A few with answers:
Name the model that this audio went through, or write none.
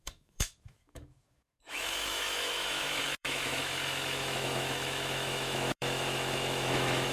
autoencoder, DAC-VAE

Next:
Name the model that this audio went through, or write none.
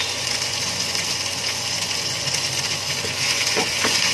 vocoder, Vocos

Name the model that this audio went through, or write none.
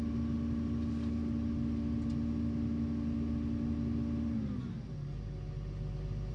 none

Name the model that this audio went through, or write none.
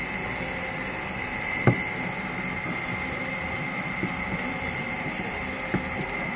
none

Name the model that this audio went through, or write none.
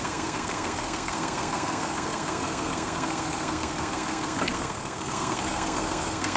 codec, SNAC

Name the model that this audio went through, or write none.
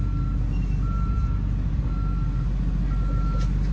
none